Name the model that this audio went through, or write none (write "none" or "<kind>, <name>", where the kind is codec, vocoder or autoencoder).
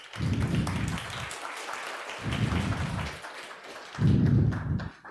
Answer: none